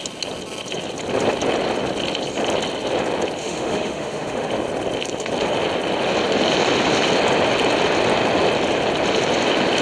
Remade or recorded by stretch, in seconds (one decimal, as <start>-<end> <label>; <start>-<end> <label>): 0.0-3.4 recorded; 3.4-4.5 remade; 4.5-9.8 recorded